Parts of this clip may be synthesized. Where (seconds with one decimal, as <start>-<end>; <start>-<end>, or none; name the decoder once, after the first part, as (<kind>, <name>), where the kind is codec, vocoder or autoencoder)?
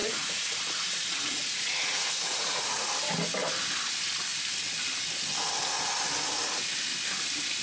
0.0-2.9 (vocoder, Vocos)